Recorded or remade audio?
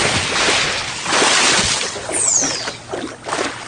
recorded